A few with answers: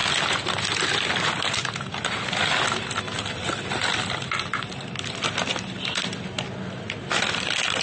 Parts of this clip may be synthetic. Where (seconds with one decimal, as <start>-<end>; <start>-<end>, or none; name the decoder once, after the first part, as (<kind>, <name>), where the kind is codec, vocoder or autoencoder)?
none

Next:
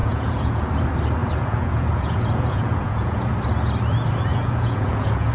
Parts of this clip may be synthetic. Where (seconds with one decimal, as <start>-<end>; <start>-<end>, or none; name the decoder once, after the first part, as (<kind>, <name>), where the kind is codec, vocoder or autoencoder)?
0.0-0.7 (vocoder, Vocos); 1.2-3.3; 4.3-5.3

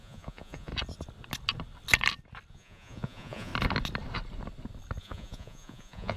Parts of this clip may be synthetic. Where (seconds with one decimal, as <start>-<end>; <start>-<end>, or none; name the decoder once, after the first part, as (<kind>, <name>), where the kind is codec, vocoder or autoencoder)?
0.0-0.7 (vocoder, Vocos); 2.5-3.5; 5.0-6.2

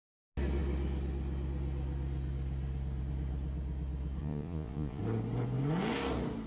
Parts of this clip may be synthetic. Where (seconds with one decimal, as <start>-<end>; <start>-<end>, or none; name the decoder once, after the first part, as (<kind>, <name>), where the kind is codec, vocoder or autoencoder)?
4.2-5.0 (vocoder, Vocos)

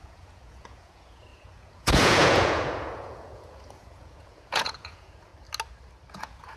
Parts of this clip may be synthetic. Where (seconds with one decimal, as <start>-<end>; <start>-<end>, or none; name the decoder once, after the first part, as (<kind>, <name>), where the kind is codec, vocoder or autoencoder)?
0.0-5.3 (vocoder, Vocos); 6.1-6.6

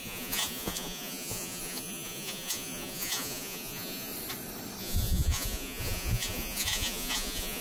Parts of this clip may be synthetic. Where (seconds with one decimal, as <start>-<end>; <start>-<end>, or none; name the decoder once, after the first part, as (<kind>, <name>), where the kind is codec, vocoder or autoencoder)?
0.0-4.1 (vocoder, Vocos); 4.8-7.6

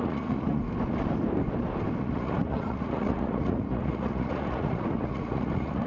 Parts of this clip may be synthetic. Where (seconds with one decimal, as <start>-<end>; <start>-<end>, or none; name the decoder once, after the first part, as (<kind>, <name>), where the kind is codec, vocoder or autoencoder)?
0.0-0.6 (vocoder, Vocos); 2.0-5.9

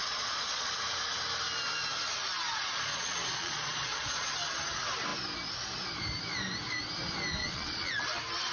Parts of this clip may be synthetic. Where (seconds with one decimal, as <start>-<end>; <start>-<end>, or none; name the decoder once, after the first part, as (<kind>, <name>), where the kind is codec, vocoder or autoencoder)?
0.0-0.7 (vocoder, Vocos); 2.9-4.3; 7.4-7.9